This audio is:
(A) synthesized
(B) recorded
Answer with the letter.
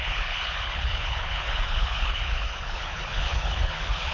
A